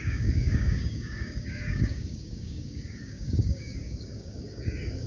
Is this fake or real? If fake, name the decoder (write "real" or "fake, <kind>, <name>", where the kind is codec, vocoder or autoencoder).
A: fake, codec, DAC